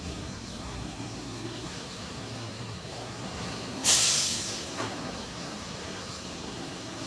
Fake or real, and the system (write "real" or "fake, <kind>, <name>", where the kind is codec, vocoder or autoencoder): fake, codec, SNAC